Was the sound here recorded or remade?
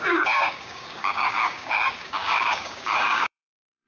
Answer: remade